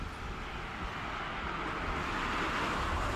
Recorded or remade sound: recorded